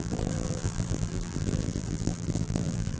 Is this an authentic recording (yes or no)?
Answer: no